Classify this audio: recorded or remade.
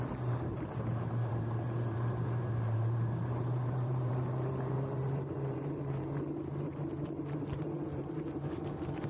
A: remade